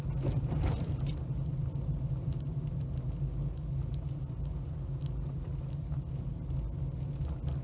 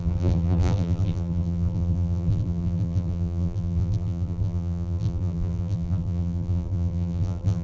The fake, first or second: second